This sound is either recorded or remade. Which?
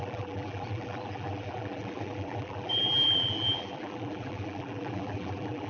remade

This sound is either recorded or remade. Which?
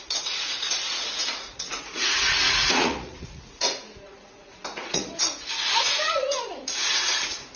remade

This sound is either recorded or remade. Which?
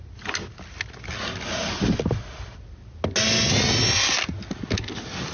recorded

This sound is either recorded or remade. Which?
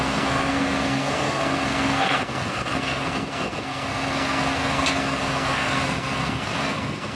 remade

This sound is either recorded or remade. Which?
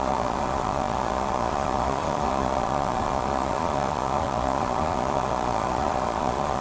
remade